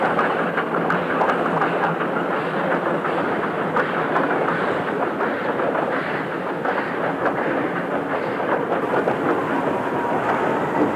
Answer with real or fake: real